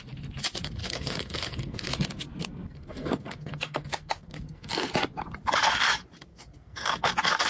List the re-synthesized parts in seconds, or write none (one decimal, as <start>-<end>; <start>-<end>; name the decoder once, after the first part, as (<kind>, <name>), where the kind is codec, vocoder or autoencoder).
0.8-1.9 (codec, SNAC); 2.4-4.9; 6.3-7.1